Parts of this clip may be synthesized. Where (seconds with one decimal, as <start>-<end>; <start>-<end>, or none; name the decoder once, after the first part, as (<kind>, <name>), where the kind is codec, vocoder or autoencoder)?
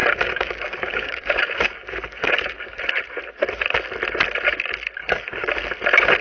0.0-2.8 (codec, DAC); 5.0-5.5